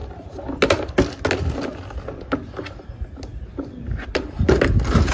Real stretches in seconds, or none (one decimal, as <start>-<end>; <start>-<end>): 0.0-5.1